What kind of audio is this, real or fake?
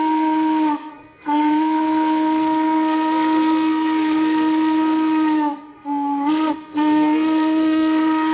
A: fake